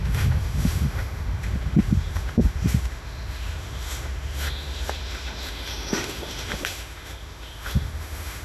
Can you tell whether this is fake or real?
fake